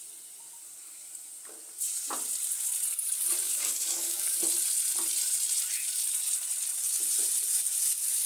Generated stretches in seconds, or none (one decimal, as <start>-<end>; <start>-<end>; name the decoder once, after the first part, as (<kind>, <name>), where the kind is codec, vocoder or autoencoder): 3.4-4.4 (codec, DAC)